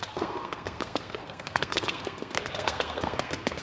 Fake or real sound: fake